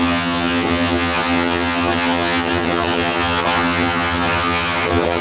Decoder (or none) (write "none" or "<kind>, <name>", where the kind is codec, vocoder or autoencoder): vocoder, HiFi-GAN